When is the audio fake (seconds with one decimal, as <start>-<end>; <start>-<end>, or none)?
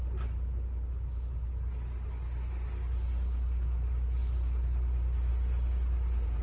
none